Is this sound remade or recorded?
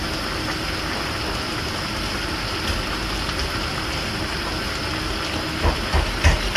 recorded